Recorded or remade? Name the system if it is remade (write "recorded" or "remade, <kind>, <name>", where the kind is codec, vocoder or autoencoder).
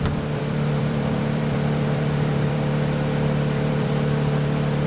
remade, vocoder, BigVGAN v2